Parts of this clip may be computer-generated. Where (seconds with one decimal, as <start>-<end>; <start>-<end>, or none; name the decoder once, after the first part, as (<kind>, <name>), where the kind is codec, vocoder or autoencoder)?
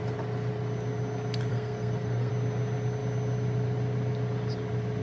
1.5-2.3 (codec, SNAC)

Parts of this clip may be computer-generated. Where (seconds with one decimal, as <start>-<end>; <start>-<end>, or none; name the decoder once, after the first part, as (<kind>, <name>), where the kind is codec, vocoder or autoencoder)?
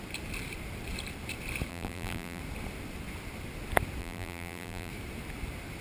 1.7-2.4 (vocoder, BigVGAN v2); 4.0-4.9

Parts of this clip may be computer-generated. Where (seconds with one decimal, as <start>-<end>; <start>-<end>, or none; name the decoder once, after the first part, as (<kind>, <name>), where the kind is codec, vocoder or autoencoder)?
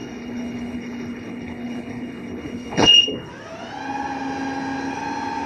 0.0-3.3 (codec, HILCodec)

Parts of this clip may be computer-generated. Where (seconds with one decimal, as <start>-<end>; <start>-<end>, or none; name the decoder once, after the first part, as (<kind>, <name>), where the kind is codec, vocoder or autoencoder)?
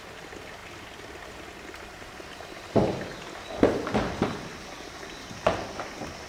none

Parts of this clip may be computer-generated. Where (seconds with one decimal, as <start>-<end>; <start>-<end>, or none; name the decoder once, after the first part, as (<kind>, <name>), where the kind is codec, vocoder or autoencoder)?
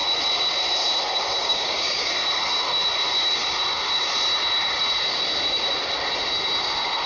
1.4-2.1 (codec, DAC)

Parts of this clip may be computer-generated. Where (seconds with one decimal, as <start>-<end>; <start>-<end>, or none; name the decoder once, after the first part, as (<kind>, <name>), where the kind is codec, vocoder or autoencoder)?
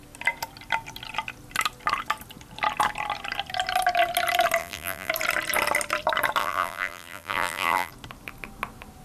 4.6-5.1 (vocoder, BigVGAN v2); 6.4-7.9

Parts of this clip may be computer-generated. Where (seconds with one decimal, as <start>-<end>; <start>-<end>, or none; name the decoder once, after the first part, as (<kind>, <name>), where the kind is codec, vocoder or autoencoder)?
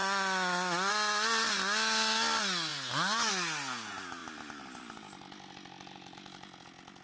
none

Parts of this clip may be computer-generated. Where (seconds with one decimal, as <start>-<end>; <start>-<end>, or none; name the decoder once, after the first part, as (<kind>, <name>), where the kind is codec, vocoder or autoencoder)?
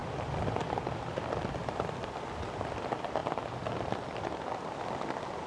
none